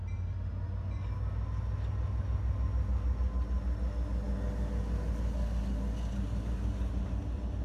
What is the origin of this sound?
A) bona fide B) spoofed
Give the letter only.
A